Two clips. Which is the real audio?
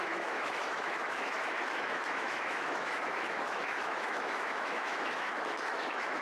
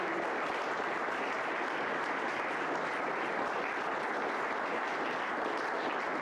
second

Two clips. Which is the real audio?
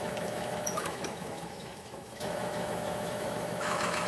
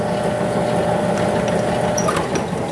second